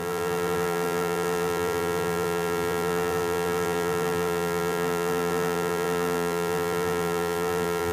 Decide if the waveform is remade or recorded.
remade